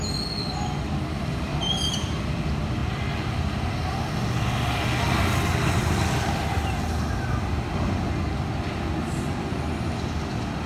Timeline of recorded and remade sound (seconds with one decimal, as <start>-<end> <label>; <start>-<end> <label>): 0.0-10.7 recorded